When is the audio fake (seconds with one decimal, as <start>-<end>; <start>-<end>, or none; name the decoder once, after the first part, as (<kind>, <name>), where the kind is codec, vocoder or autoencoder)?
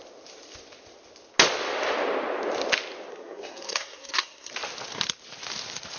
3.1-4.5 (codec, SNAC)